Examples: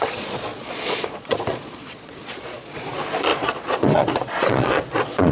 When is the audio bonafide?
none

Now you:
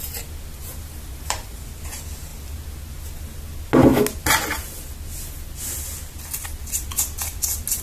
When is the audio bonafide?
0.0-1.1; 1.7-7.8